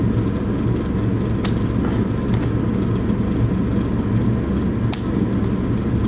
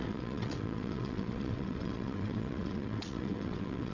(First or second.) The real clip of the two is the first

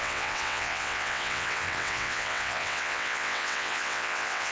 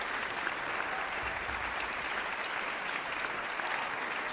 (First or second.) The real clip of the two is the second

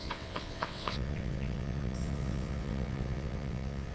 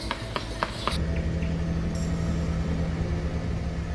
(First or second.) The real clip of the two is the second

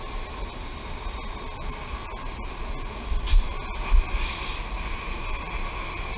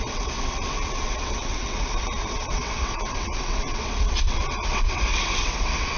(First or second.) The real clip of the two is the first